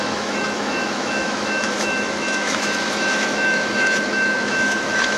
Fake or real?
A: fake